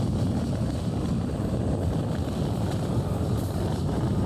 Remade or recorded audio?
recorded